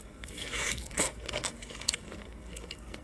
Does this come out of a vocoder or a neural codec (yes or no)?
yes